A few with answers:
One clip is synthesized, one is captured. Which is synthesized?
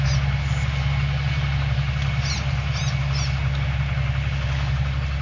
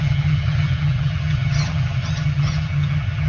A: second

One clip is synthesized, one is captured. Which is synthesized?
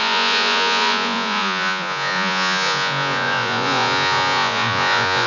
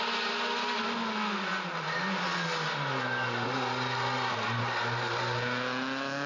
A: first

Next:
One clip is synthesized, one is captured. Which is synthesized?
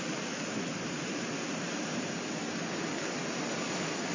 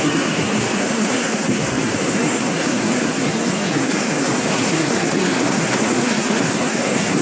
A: second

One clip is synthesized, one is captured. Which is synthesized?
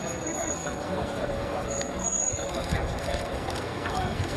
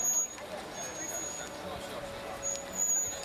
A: first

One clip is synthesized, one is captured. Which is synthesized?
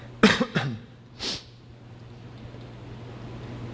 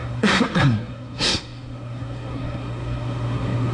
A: second